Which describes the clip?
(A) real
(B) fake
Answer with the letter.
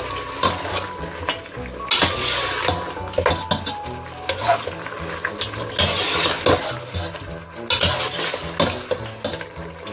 A